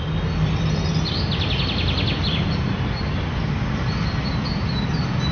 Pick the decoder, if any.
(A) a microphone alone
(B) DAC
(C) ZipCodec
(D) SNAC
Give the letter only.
A